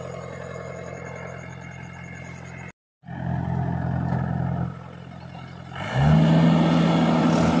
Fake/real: real